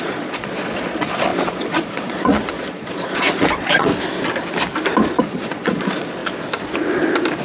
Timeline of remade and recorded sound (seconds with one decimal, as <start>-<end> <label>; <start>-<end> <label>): 0.0-3.9 remade; 3.9-5.2 recorded; 5.2-6.2 remade; 6.2-7.4 recorded